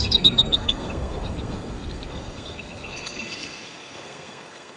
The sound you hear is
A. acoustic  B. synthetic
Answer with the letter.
B